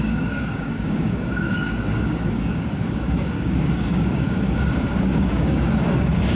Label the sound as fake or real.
fake